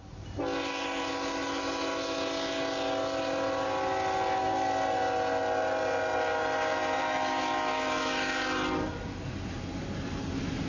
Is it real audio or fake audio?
real